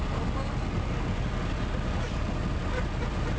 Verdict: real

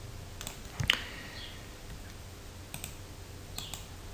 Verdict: real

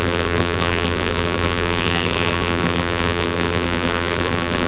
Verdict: fake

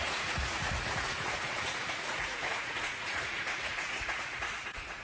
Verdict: fake